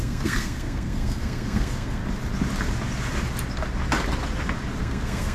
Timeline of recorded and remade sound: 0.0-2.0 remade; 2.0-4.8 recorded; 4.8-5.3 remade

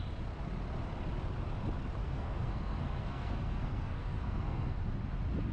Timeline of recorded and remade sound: 0.0-2.0 recorded; 2.0-4.8 remade; 4.8-5.5 recorded

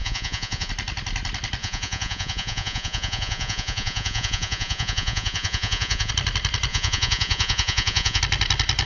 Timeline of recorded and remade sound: 0.0-0.7 remade; 0.7-1.6 recorded; 1.6-6.1 remade; 6.1-6.7 recorded; 6.7-8.2 remade; 8.2-8.9 recorded

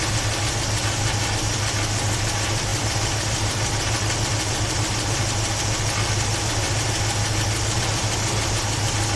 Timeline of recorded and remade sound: 0.0-9.2 recorded